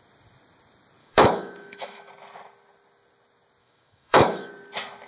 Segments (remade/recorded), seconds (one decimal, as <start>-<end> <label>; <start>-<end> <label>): 0.0-1.0 recorded; 1.0-2.1 remade; 2.1-3.6 recorded; 3.6-4.5 remade; 4.5-5.1 recorded